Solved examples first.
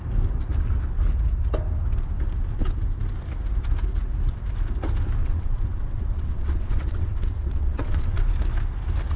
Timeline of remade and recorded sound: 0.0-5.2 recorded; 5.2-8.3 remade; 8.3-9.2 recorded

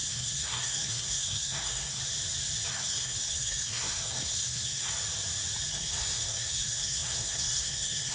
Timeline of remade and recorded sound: 0.0-2.0 remade; 2.0-2.7 recorded; 2.7-4.9 remade; 4.9-5.7 recorded; 5.7-8.1 remade

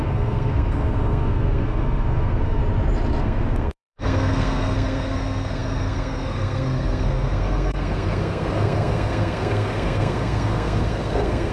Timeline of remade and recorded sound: 0.0-2.6 remade; 2.6-3.2 recorded; 3.2-11.5 remade

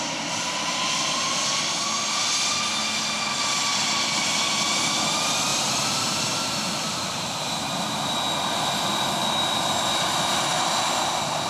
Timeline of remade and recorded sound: 0.0-5.5 recorded; 5.5-8.1 remade; 8.1-11.5 recorded

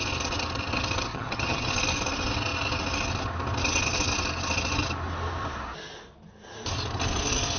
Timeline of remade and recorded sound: 0.0-1.1 recorded; 1.1-1.7 remade; 1.7-7.6 recorded

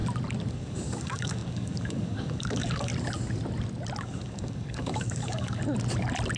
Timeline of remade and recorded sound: 0.0-0.5 recorded; 0.5-2.9 remade; 2.9-4.0 recorded; 4.0-5.6 remade; 5.6-6.4 recorded

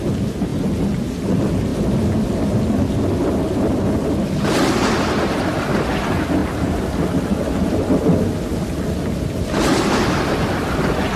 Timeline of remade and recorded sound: 0.0-11.2 recorded